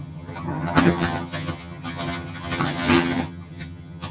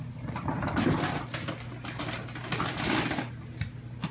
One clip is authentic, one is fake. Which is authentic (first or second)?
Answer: second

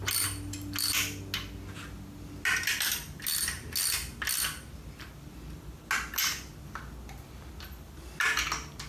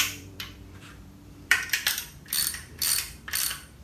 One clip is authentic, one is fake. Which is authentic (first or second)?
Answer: first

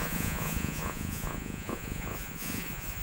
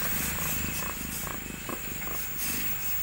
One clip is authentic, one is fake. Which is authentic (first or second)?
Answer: second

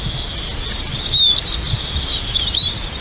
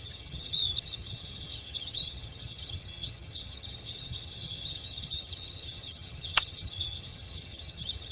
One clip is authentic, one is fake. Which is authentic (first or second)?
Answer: first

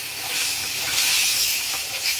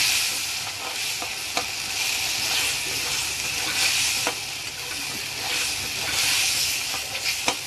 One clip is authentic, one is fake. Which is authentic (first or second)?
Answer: second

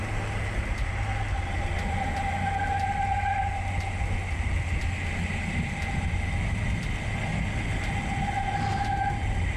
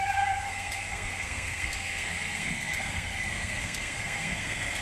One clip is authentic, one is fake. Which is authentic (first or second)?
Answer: first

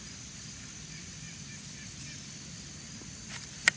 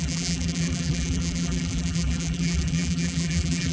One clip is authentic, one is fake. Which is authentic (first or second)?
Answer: first